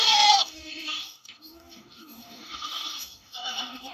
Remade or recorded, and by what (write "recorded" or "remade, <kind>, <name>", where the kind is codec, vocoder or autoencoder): remade, codec, DAC